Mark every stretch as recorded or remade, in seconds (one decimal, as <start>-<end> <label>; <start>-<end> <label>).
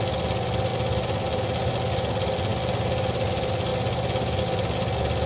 0.0-5.3 recorded